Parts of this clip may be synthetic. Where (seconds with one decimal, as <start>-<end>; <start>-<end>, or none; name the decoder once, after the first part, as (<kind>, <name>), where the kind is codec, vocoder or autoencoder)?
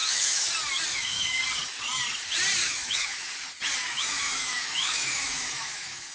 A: 0.0-0.5 (autoencoder, DAC-VAE); 0.9-1.4; 2.6-3.3; 3.8-6.1